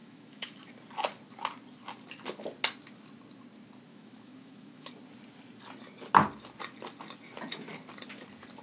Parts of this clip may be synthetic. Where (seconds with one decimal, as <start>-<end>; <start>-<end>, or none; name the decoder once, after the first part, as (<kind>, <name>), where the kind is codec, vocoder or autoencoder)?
0.0-0.6 (autoencoder, DAC-VAE); 3.9-4.9